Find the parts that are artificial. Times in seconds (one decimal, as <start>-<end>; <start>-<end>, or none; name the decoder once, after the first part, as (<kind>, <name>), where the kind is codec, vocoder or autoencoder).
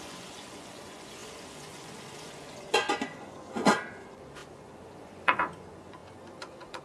0.0-6.8 (vocoder, Vocos)